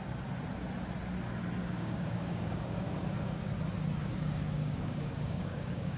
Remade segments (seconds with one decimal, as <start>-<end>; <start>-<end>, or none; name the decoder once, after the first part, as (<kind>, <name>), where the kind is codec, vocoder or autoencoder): 1.6-3.5 (codec, DAC); 4.0-6.0